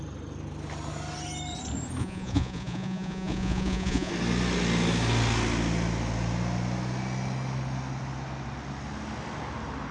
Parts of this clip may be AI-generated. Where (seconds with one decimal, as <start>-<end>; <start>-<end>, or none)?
2.0-4.1